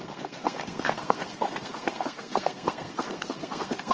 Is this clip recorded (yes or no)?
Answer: no